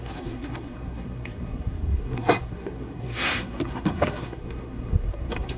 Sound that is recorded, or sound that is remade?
remade